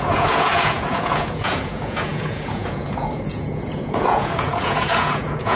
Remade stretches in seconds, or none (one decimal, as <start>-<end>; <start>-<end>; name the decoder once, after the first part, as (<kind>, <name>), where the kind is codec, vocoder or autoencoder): 0.0-5.6 (vocoder, Vocos)